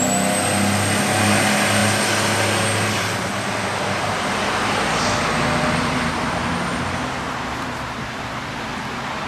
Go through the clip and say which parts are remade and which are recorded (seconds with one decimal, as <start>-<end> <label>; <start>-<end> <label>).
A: 0.0-9.3 recorded